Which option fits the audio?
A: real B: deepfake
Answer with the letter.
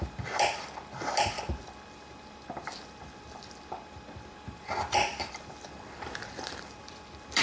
B